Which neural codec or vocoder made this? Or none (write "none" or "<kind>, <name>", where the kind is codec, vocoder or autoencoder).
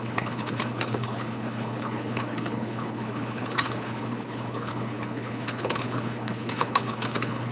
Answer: codec, HILCodec